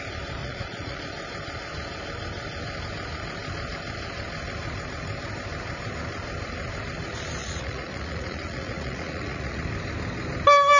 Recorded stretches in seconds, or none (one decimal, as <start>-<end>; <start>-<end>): 0.0-0.4; 1.0-7.4; 9.6-10.8

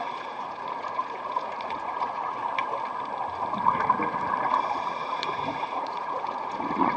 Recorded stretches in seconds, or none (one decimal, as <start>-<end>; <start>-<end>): 2.4-4.7

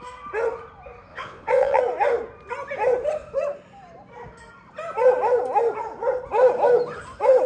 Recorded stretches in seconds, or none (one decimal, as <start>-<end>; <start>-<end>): 0.0-1.1; 1.8-7.5

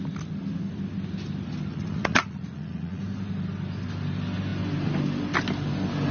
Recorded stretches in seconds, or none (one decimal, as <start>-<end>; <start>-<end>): 0.0-1.7; 3.0-6.1

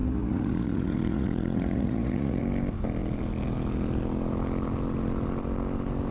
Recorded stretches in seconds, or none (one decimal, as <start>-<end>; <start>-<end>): 2.4-6.1

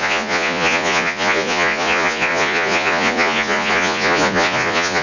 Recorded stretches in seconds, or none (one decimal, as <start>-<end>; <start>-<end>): none